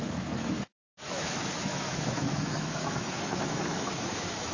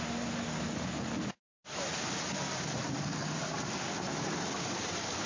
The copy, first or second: first